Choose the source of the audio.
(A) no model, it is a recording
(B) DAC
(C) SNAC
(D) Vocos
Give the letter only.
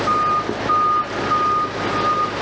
A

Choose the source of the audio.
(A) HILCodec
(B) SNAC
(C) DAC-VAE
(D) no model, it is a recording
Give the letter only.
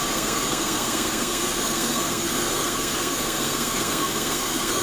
B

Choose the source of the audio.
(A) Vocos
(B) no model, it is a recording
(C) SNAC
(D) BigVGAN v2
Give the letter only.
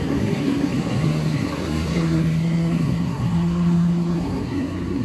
C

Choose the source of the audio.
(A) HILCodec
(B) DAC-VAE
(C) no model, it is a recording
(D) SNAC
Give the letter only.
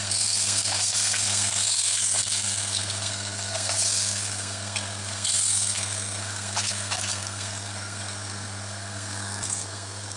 D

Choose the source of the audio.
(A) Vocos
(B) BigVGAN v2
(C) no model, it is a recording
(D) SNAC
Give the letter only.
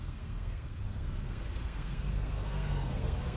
D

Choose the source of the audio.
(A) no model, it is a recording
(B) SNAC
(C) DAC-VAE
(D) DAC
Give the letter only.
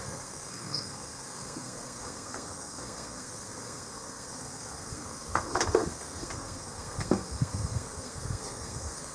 B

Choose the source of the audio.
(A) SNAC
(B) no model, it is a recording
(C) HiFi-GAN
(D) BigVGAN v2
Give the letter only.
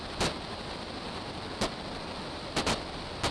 B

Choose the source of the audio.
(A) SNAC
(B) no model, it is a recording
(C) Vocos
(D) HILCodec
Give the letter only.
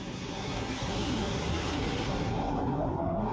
A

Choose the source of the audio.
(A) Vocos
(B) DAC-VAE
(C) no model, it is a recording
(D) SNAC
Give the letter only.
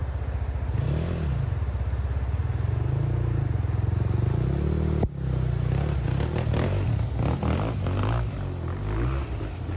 C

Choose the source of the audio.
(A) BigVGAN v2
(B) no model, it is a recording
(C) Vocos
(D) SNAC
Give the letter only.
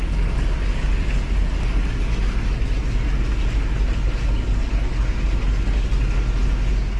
B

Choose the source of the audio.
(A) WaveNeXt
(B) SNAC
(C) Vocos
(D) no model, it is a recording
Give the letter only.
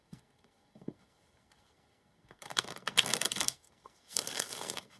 B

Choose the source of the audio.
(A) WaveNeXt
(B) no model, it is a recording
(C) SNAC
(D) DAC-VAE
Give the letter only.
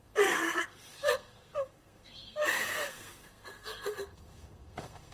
C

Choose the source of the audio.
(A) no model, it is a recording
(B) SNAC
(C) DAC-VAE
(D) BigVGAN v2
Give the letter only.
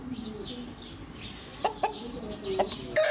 A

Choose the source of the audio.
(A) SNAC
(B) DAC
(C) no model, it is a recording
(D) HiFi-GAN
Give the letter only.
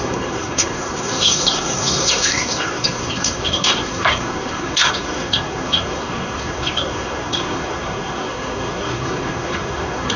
A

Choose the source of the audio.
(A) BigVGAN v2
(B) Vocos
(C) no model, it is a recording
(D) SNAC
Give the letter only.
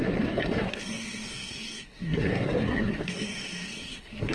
D